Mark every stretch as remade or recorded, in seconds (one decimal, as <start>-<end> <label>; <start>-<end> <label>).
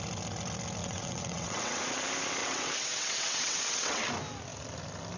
0.0-0.8 recorded; 0.8-1.8 remade; 1.8-2.4 recorded; 2.4-4.1 remade; 4.1-5.2 recorded